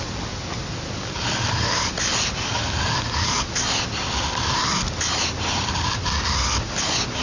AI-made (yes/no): no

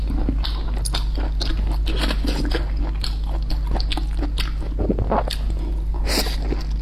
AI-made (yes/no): no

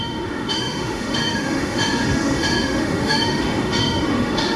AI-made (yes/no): yes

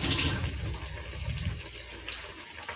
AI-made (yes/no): no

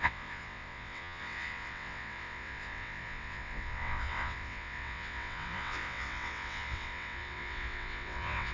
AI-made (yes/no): yes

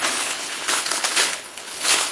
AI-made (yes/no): yes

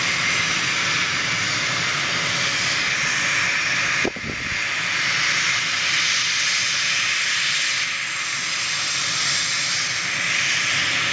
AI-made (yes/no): no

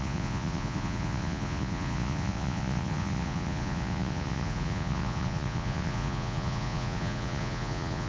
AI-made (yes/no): yes